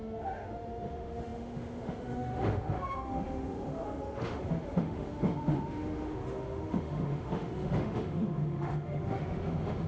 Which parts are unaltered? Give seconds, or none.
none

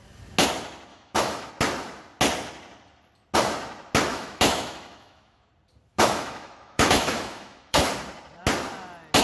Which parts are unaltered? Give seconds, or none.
0.0-0.9; 1.5-4.1; 5.5-5.9; 7.9-9.2

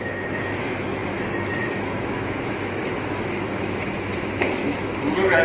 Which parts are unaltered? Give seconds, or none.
none

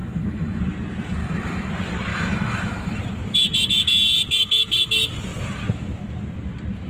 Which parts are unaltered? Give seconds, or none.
0.6-1.2; 1.7-2.1; 3.0-6.9

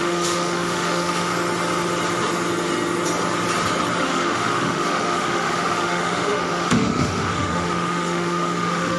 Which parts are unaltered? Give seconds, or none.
1.3-4.0